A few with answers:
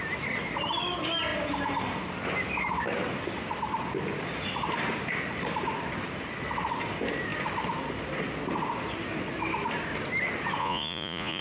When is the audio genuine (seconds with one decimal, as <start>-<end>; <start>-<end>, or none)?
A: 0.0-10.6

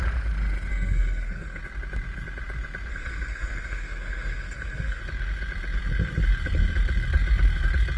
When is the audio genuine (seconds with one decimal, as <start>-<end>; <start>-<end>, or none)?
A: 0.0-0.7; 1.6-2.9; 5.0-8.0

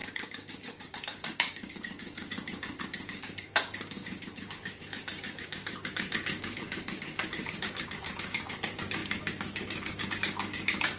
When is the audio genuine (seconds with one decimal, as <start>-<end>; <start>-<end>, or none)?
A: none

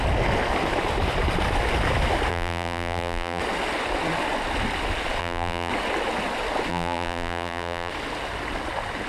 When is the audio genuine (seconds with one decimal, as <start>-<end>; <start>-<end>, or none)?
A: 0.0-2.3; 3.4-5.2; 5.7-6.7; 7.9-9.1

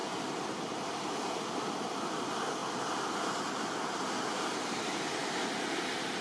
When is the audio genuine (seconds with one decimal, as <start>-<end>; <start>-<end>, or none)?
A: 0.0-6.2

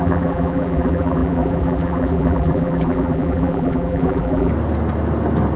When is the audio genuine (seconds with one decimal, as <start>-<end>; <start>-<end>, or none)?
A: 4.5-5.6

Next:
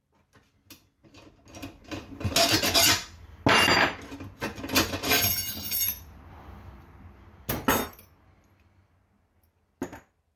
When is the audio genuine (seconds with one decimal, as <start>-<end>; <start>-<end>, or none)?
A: 0.0-10.4